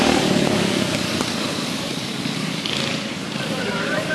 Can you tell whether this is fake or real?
fake